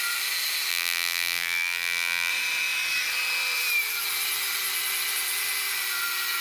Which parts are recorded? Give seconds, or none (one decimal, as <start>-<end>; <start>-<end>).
0.0-0.7; 2.3-6.4